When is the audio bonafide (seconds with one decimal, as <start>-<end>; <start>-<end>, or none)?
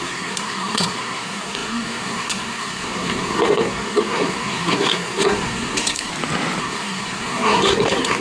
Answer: 6.1-6.6